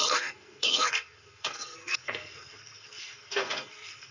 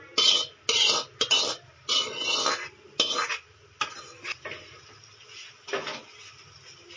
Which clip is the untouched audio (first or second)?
second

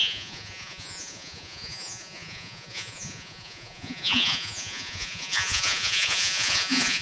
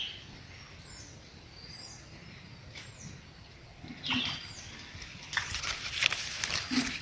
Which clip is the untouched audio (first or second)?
second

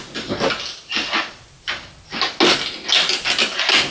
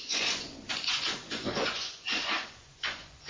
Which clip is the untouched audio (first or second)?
first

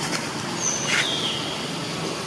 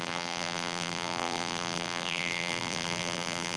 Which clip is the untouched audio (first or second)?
first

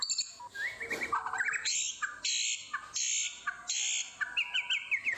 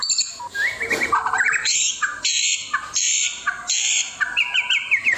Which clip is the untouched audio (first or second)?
first